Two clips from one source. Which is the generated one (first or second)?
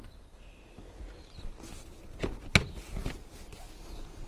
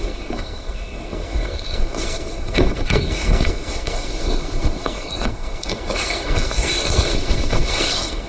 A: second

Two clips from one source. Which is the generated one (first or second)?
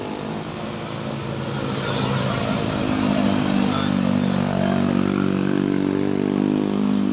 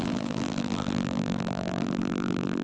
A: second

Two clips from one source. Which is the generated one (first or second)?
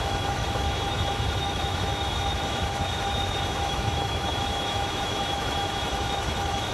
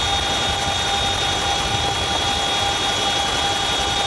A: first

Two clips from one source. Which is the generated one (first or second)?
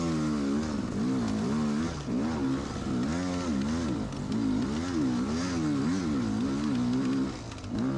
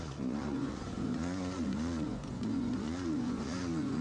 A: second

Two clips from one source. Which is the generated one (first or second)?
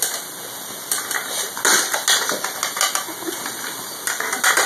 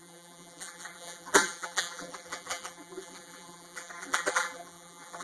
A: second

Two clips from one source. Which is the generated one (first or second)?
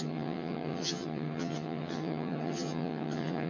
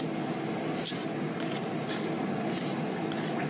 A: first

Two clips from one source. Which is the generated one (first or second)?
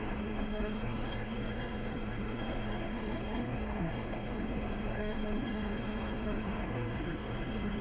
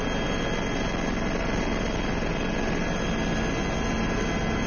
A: first